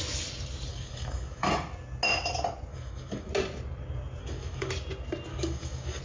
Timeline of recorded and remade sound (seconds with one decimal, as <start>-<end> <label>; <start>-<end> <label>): 0.0-0.7 recorded; 0.7-1.5 remade; 1.5-2.7 recorded; 2.7-3.3 remade; 3.3-4.2 recorded; 4.2-4.7 remade; 4.7-5.3 recorded; 5.3-6.0 remade